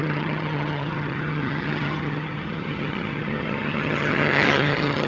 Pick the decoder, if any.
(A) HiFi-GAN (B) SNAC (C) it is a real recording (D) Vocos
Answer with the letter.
A